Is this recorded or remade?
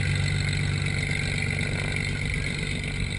recorded